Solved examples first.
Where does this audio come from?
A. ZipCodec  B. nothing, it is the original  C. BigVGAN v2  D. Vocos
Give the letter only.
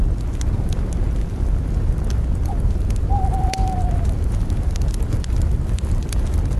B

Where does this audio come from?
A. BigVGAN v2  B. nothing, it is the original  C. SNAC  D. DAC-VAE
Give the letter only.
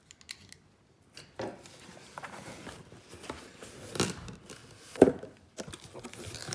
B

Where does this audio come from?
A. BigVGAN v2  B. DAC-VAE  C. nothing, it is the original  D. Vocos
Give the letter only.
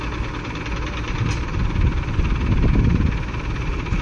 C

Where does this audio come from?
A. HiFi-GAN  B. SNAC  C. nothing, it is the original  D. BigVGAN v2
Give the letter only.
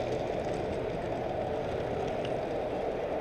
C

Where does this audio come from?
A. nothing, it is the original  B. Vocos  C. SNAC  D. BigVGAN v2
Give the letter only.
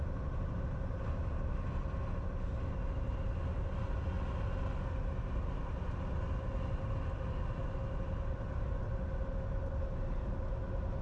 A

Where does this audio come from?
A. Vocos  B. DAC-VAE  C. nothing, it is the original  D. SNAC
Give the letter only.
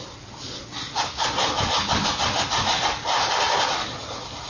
C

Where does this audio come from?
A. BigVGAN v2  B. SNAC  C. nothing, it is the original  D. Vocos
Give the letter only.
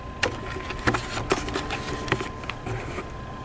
C